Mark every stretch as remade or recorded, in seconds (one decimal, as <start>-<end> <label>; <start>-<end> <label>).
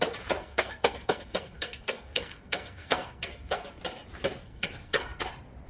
0.0-0.4 recorded; 0.4-3.8 remade; 3.8-4.4 recorded; 4.4-5.2 remade; 5.2-5.7 recorded